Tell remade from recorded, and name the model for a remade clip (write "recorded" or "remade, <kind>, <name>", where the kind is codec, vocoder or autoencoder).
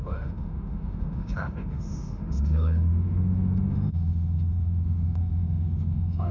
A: remade, autoencoder, DAC-VAE